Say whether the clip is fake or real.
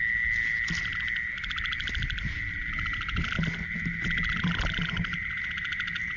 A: real